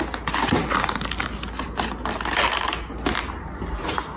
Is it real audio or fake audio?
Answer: real